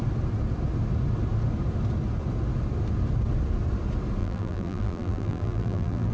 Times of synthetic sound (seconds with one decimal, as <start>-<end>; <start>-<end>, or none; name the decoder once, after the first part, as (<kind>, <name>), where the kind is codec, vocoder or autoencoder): 4.2-6.1 (vocoder, BigVGAN v2)